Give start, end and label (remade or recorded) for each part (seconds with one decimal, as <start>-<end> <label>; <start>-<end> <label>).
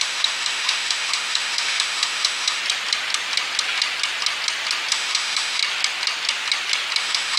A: 0.0-2.6 remade; 2.6-4.9 recorded; 4.9-5.6 remade; 5.6-7.0 recorded; 7.0-7.4 remade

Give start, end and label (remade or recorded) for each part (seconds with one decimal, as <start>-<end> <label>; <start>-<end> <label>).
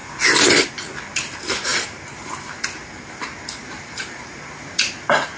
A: 0.0-3.6 recorded; 3.6-4.9 remade; 4.9-5.4 recorded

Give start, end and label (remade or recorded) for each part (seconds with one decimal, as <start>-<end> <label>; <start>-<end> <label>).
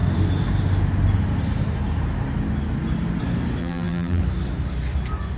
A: 0.0-3.6 recorded; 3.6-4.2 remade; 4.2-5.4 recorded